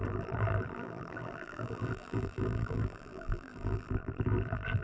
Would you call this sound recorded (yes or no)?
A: no